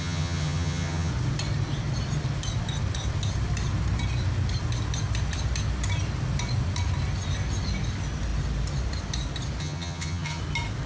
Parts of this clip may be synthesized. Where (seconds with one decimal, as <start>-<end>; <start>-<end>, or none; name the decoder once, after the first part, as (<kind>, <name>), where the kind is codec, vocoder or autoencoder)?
0.0-1.1 (vocoder, HiFi-GAN); 9.6-10.4